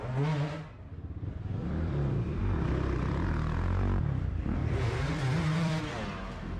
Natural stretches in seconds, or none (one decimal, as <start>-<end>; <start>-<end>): 0.0-1.6; 2.4-4.6; 5.7-6.6